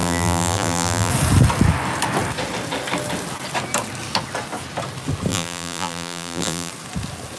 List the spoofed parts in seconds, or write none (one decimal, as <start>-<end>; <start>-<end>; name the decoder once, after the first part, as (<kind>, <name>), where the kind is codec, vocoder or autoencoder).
0.0-1.1 (vocoder, BigVGAN v2); 5.3-6.7